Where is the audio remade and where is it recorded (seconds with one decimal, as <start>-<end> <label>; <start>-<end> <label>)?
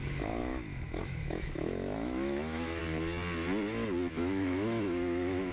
0.0-2.8 remade; 2.8-4.1 recorded; 4.1-5.5 remade